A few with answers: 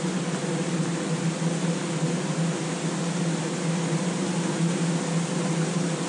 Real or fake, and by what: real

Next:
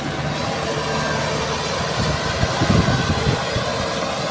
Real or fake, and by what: real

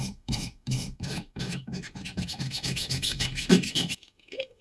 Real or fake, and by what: fake, autoencoder, DAC-VAE